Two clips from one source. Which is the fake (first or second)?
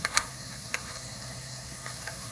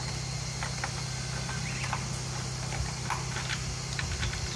first